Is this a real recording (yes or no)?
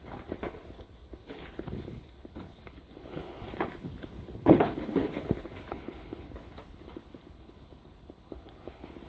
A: no